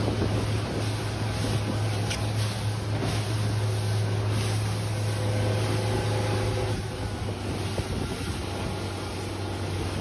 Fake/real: real